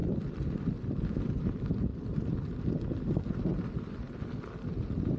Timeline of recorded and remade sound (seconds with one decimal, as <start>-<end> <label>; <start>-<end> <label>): 0.0-1.1 recorded; 1.1-1.9 remade; 1.9-5.2 recorded